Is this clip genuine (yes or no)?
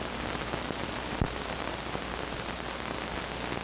yes